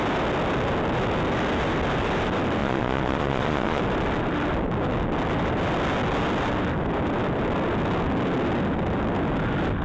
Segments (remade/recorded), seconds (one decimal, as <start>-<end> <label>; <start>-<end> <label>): 0.0-2.6 recorded; 2.6-3.8 remade; 3.8-9.8 recorded

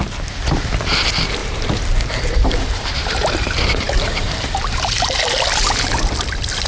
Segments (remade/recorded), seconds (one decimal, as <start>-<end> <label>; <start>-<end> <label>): 0.0-1.4 recorded; 1.4-5.2 remade; 5.2-6.7 recorded

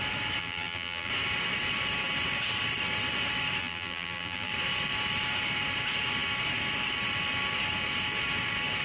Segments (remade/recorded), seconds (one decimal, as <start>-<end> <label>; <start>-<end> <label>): 0.0-0.4 recorded; 0.4-1.1 remade; 1.1-3.6 recorded; 3.6-4.5 remade; 4.5-8.8 recorded

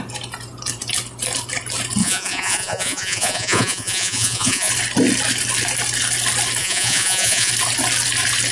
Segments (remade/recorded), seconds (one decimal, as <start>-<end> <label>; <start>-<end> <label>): 0.0-2.0 recorded; 2.0-4.7 remade; 4.7-6.6 recorded; 6.6-7.5 remade; 7.5-8.5 recorded

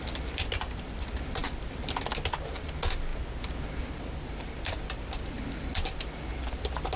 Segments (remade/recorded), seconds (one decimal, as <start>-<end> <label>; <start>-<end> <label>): 0.0-7.0 recorded

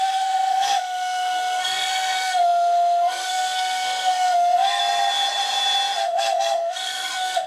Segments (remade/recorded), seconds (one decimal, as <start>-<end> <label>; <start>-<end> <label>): 0.0-4.8 remade; 4.8-6.0 recorded; 6.0-7.5 remade

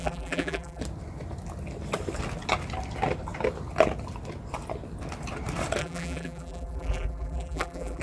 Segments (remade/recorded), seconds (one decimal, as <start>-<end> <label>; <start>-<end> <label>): 0.0-0.8 remade; 0.8-5.8 recorded; 5.8-8.0 remade

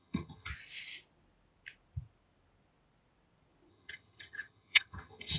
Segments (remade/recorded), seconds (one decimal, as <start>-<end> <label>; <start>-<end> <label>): 0.0-0.5 remade; 0.5-3.7 recorded; 3.7-5.4 remade